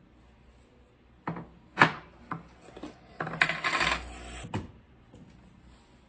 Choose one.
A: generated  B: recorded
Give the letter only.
B